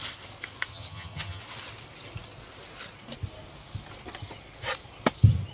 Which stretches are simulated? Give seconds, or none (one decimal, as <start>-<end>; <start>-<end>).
0.7-1.4